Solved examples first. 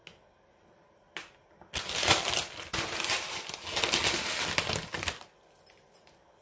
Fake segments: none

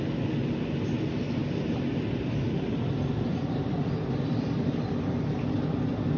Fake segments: 1.4-5.0 (vocoder, BigVGAN v2)

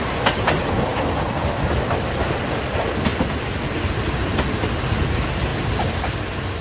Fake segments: none

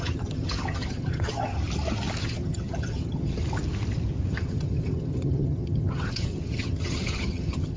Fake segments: 0.0-1.5 (vocoder, HiFi-GAN); 2.2-3.4; 4.3-7.8